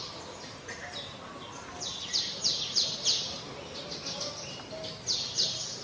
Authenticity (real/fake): real